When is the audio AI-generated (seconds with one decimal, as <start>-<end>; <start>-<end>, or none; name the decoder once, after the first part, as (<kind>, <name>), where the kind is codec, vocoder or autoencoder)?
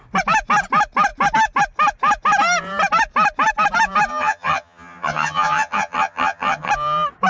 4.1-6.7 (vocoder, HiFi-GAN)